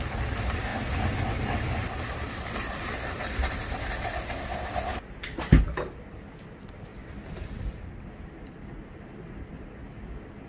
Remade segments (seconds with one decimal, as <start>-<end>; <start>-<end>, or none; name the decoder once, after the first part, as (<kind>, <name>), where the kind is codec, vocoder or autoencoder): 4.9-5.6 (vocoder, BigVGAN v2)

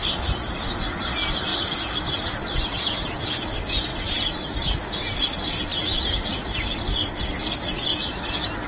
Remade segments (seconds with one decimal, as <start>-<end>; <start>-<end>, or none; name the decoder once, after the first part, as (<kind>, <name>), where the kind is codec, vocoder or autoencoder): 1.5-2.8 (vocoder, BigVGAN v2); 3.9-4.6; 5.7-7.4

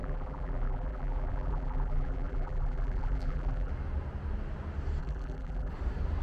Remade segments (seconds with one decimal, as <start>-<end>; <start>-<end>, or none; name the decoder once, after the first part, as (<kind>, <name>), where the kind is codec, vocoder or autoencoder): 0.0-3.7 (vocoder, BigVGAN v2); 5.0-5.7

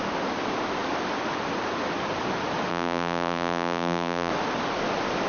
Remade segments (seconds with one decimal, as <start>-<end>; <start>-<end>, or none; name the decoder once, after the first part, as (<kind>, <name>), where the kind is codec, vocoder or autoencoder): 2.7-4.3 (vocoder, BigVGAN v2)

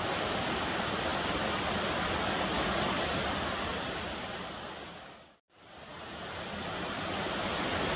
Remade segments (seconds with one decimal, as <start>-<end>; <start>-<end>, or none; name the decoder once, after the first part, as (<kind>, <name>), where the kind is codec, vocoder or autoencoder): 0.0-5.9 (vocoder, BigVGAN v2); 7.0-8.0